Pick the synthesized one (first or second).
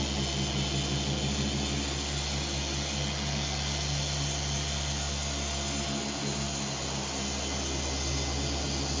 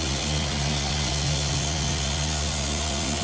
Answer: second